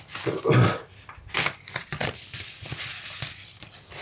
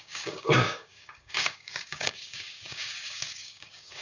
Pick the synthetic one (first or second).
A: second